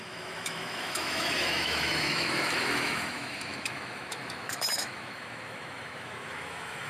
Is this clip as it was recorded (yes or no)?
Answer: no